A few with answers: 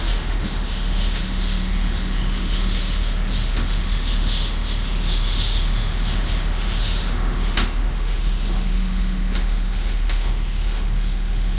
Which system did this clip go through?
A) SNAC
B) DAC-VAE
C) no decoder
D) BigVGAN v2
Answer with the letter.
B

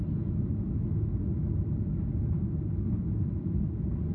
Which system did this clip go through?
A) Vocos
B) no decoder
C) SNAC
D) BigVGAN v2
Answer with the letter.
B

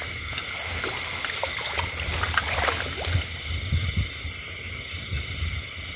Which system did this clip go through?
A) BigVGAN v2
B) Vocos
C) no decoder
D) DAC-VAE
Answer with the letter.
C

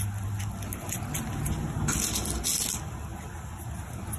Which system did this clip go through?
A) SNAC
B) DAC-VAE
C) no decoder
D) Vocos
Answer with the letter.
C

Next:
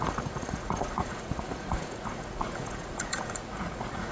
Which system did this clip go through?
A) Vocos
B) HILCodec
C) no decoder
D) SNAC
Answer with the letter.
A